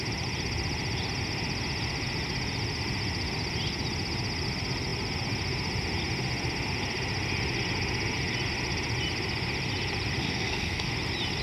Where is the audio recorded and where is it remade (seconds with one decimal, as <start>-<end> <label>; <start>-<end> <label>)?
0.0-10.2 recorded; 10.2-10.9 remade; 10.9-11.4 recorded